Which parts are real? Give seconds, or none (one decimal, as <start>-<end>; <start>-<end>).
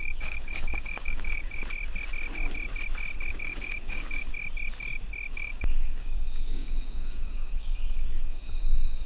1.6-3.3; 4.3-5.3